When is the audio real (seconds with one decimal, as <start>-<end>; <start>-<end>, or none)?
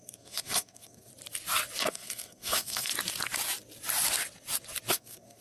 1.1-1.8; 2.9-4.9